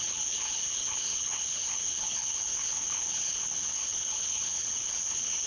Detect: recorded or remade remade